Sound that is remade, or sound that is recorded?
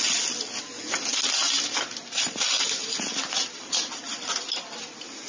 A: recorded